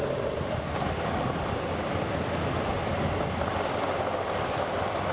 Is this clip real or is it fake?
real